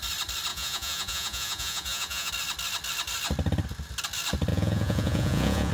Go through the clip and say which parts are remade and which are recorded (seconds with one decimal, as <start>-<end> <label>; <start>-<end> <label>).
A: 0.0-0.5 recorded; 0.5-2.3 remade; 2.3-4.5 recorded; 4.5-5.7 remade